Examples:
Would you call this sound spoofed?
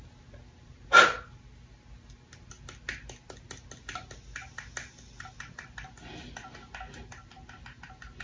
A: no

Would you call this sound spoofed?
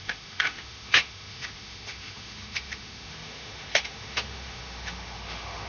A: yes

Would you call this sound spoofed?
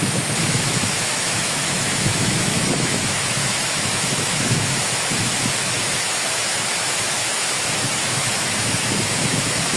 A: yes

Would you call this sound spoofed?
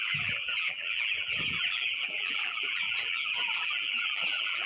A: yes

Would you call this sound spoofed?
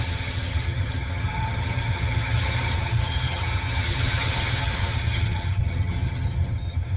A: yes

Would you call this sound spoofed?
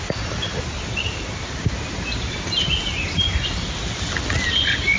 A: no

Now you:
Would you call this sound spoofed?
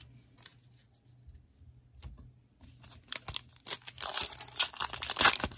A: no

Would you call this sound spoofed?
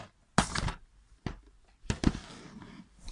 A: no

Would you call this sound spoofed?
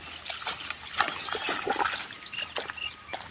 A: no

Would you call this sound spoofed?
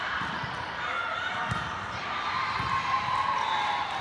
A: no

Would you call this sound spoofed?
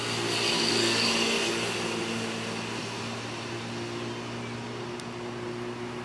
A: no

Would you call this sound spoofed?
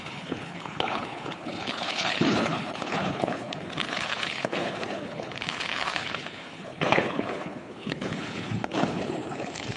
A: yes